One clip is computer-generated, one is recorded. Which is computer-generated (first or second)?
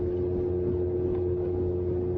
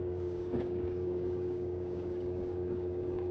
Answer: second